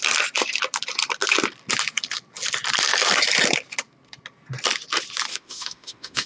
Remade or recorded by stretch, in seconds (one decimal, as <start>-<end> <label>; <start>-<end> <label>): 0.0-5.3 recorded; 5.3-6.3 remade